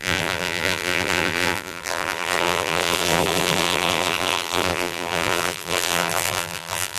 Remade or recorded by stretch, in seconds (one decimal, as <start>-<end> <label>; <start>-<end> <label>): 0.0-7.0 remade